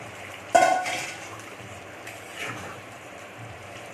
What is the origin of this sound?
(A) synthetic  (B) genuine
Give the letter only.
A